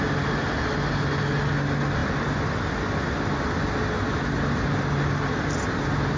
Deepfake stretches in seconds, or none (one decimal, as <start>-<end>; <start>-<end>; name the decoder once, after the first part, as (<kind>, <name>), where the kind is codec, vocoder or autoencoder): none